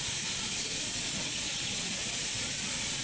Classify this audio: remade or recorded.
remade